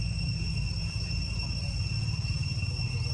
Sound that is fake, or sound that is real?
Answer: real